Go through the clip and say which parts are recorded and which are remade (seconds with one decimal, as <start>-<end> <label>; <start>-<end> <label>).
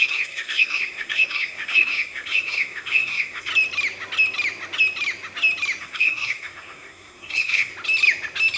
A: 0.0-3.5 remade; 3.5-5.8 recorded; 5.8-7.7 remade; 7.7-8.6 recorded